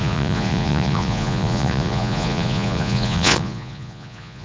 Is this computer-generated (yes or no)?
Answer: yes